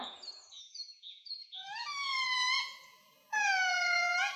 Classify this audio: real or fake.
fake